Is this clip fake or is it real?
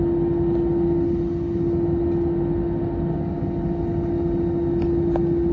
real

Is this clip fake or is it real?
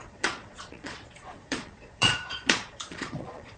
fake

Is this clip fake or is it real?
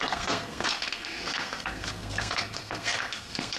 fake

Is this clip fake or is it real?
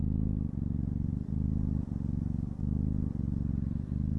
fake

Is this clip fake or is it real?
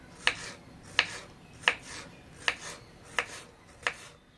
real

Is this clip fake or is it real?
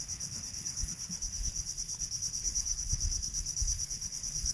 fake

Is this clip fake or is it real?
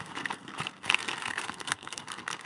fake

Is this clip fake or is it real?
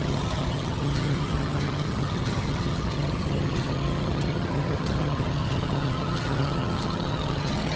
fake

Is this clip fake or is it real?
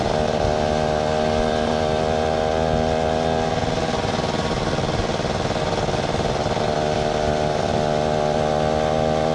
real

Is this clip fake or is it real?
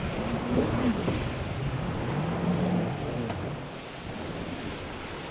real